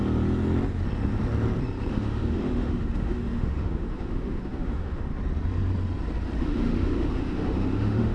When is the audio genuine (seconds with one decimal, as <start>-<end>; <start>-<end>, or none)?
0.0-1.9; 5.1-6.4